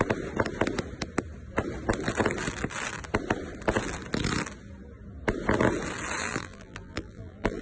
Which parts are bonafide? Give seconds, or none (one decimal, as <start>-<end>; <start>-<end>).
0.0-6.2